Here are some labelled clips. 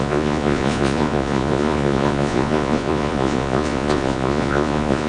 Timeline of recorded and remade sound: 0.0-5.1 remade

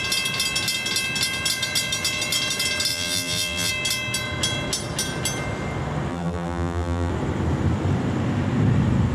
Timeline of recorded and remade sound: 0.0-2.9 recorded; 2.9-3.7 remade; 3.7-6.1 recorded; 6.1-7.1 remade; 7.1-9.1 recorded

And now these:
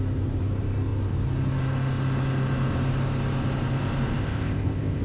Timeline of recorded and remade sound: 0.0-4.2 recorded; 4.2-5.0 remade

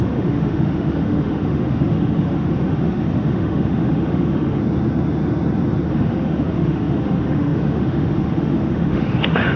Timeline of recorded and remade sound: 0.0-4.6 remade; 4.6-5.9 recorded; 5.9-9.6 remade

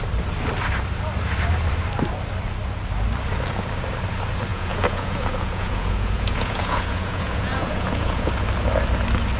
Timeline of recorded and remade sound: 0.0-4.5 recorded; 4.5-8.3 remade; 8.3-9.4 recorded